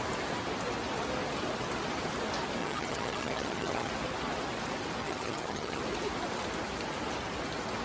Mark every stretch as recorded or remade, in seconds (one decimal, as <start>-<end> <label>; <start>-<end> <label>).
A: 0.0-2.6 recorded; 2.6-3.9 remade; 3.9-5.0 recorded; 5.0-5.8 remade; 5.8-7.8 recorded

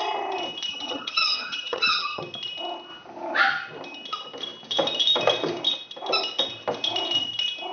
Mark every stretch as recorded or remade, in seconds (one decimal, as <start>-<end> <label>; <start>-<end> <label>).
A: 0.0-0.7 recorded; 0.7-2.2 remade; 2.2-7.7 recorded

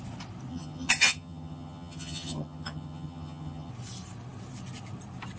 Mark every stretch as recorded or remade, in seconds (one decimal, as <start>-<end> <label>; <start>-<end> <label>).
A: 0.0-0.5 recorded; 0.5-3.7 remade; 3.7-5.4 recorded

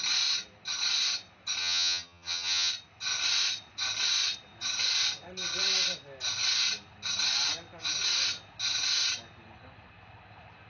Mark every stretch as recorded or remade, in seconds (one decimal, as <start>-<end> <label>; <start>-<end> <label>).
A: 0.0-1.6 recorded; 1.6-2.7 remade; 2.7-10.7 recorded

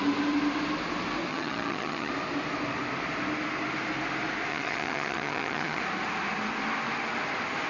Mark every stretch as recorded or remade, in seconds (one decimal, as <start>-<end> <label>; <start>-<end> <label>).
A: 0.0-1.3 recorded; 1.3-2.1 remade; 2.1-4.5 recorded; 4.5-5.8 remade; 5.8-7.7 recorded

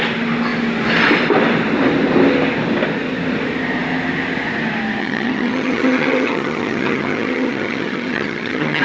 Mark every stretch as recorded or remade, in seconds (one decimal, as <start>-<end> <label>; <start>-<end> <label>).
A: 0.0-5.0 recorded; 5.0-8.8 remade

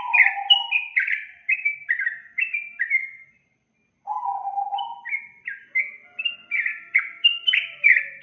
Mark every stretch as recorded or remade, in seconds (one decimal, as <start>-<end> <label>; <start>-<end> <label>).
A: 0.0-8.2 recorded

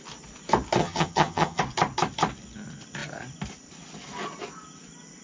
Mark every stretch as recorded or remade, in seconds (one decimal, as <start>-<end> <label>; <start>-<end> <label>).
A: 0.0-0.8 recorded; 0.8-1.6 remade; 1.6-5.2 recorded